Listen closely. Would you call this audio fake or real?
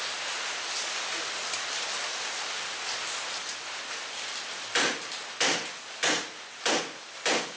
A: real